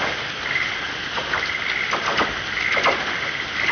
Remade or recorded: recorded